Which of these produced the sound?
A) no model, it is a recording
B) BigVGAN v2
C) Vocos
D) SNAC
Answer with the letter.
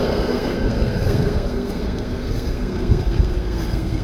D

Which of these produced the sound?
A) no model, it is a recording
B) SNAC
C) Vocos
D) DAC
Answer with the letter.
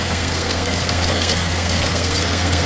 B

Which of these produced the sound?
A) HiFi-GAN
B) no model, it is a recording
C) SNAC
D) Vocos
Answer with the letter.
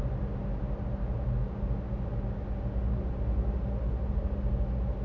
B